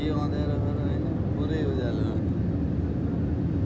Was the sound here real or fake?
real